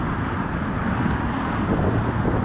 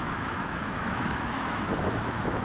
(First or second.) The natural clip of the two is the first